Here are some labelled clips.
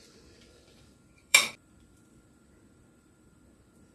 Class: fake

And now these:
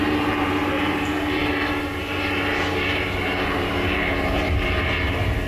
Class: fake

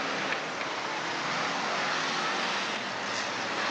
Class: real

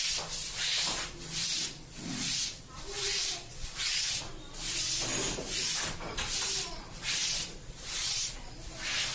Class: fake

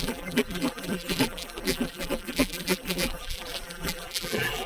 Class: fake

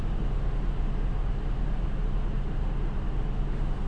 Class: fake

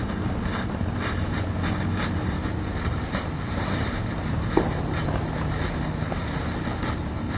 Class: fake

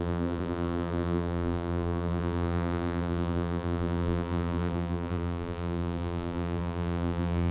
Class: fake